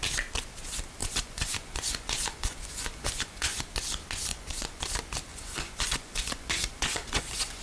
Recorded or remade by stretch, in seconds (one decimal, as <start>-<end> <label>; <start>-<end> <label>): 0.0-1.0 recorded; 1.0-3.7 remade; 3.7-4.3 recorded; 4.3-4.8 remade; 4.8-5.3 recorded; 5.3-7.6 remade